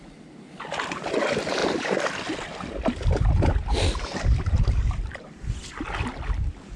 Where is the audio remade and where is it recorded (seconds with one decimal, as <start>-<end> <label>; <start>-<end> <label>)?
0.0-1.6 recorded; 1.6-5.7 remade; 5.7-6.8 recorded